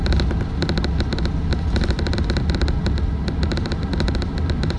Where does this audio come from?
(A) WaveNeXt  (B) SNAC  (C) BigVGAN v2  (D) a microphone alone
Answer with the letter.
D